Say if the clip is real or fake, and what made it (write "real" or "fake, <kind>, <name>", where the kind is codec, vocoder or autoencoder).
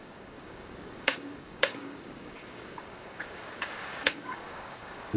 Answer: fake, codec, DAC